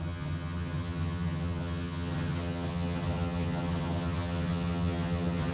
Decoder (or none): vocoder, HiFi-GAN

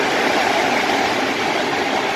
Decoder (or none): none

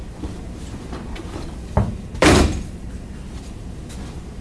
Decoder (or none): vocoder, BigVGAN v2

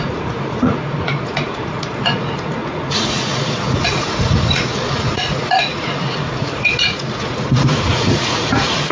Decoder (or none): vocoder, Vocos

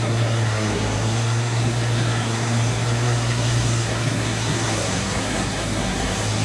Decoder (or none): codec, SNAC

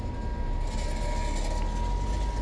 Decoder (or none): none